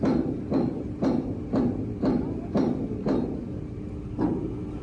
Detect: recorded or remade recorded